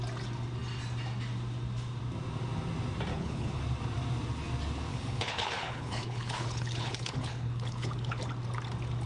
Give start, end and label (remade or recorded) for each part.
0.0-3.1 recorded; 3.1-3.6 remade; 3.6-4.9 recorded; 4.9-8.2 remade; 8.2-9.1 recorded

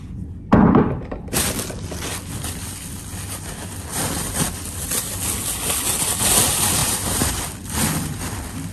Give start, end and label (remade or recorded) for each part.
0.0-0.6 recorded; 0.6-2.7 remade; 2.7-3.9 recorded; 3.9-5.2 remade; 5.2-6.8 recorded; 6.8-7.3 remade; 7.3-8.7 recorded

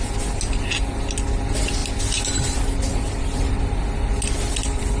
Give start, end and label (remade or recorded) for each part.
0.0-5.0 recorded

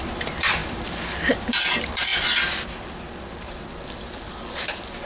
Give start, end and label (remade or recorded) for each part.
0.0-5.1 remade

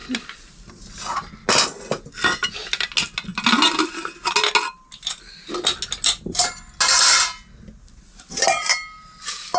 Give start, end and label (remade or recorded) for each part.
0.0-0.7 remade; 0.7-2.4 recorded; 2.4-2.9 remade; 2.9-9.6 recorded